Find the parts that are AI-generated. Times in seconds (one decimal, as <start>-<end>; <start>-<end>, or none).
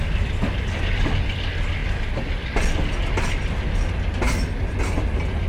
none